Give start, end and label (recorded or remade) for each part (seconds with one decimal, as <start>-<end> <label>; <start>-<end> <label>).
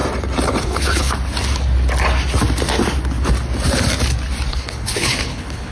0.0-0.6 recorded; 0.6-1.1 remade; 1.1-4.5 recorded; 4.5-5.7 remade